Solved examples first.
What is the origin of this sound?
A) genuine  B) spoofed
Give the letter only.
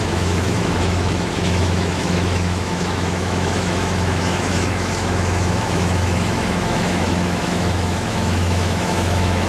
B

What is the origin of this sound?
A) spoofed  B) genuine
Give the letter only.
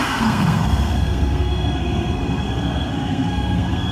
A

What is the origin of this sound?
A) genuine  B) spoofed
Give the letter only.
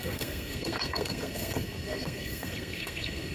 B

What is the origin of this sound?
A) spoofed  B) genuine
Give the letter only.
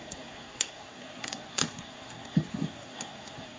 A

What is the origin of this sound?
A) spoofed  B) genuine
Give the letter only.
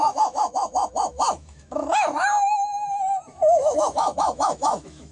A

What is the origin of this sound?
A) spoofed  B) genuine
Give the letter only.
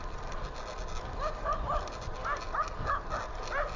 B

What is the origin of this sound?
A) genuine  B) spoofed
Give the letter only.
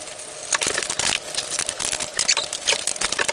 A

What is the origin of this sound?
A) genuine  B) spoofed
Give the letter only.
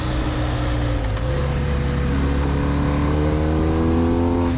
A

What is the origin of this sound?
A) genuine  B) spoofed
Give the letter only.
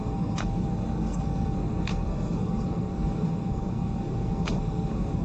B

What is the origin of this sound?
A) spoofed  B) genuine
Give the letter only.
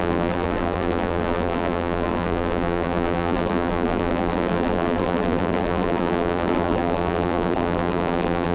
A